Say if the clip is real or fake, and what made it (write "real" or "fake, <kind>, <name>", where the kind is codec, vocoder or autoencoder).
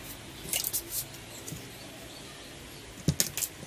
real